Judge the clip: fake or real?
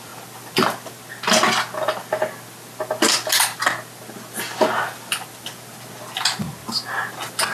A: real